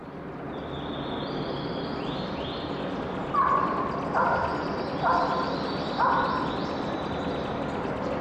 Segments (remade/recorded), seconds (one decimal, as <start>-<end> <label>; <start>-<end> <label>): 0.0-8.2 recorded